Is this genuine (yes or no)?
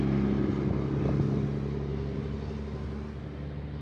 yes